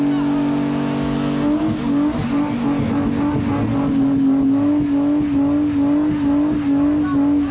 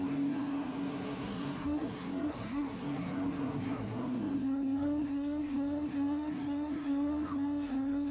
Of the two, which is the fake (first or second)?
second